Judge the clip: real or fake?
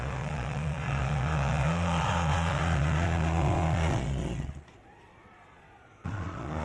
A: fake